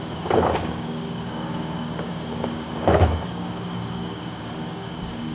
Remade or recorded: remade